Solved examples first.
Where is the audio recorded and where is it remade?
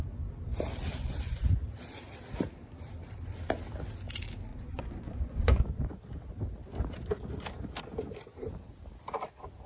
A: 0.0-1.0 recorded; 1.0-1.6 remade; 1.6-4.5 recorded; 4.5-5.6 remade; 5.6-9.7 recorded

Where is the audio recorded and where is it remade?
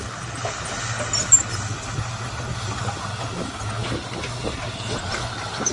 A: 0.0-5.7 recorded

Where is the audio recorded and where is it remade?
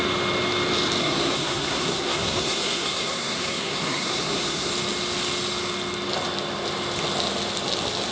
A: 0.0-1.0 recorded; 1.0-4.7 remade; 4.7-8.1 recorded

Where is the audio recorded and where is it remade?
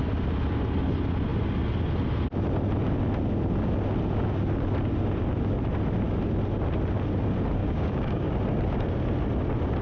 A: 0.0-7.6 recorded; 7.6-8.3 remade; 8.3-9.8 recorded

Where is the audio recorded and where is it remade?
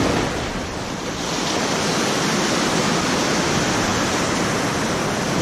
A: 0.0-5.4 recorded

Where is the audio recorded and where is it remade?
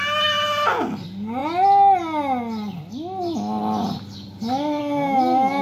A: 0.0-5.6 recorded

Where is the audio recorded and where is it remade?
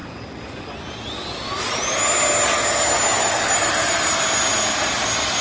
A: 0.0-5.4 recorded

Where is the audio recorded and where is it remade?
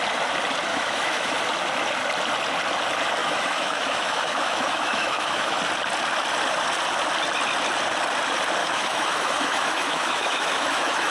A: 0.0-0.7 recorded; 0.7-1.4 remade; 1.4-3.2 recorded; 3.2-5.6 remade; 5.6-8.6 recorded; 8.6-11.1 remade